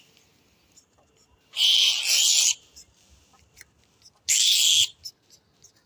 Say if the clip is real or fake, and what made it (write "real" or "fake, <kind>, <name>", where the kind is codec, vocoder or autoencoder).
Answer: real